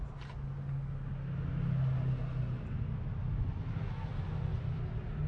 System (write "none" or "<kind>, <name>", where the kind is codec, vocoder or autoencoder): none